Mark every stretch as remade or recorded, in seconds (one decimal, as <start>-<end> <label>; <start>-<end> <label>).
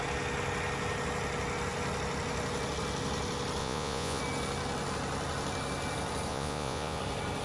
0.0-3.6 recorded; 3.6-4.2 remade; 4.2-6.3 recorded; 6.3-7.0 remade; 7.0-7.4 recorded